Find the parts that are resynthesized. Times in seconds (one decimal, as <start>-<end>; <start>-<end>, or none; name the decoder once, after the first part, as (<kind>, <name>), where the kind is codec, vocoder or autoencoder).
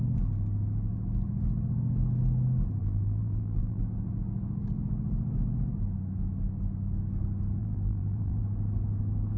2.8-3.8 (vocoder, BigVGAN v2); 7.6-8.4